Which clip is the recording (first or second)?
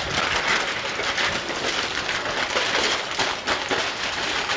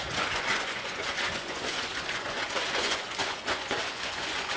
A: first